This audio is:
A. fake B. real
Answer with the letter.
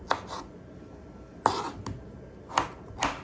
B